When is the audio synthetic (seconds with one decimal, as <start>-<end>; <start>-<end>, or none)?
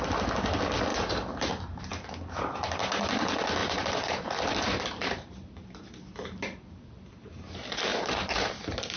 0.9-1.8; 3.6-6.9; 7.9-8.5